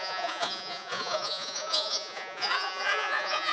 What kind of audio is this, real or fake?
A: fake